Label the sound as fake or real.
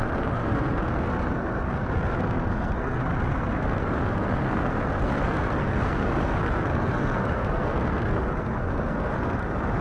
fake